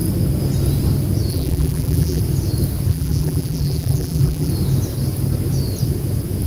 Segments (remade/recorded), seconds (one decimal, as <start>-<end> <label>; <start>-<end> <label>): 0.0-1.3 recorded; 1.3-2.2 remade; 2.2-2.9 recorded; 2.9-4.5 remade; 4.5-6.5 recorded